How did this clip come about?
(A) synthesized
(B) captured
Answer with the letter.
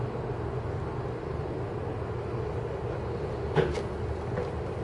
B